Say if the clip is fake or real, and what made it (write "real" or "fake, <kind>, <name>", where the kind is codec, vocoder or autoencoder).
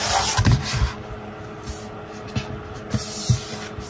real